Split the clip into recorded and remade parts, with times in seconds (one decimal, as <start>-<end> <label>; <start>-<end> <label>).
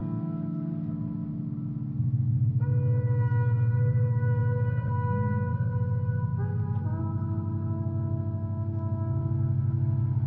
0.0-0.9 remade; 0.9-10.3 recorded